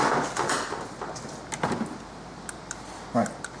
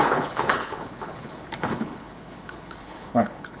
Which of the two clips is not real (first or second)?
second